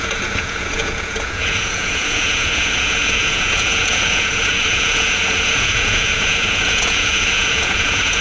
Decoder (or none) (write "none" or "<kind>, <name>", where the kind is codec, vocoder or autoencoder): vocoder, Vocos